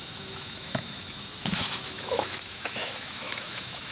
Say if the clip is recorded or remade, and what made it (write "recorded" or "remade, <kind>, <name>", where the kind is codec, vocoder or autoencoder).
remade, autoencoder, DAC-VAE